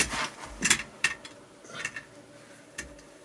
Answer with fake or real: real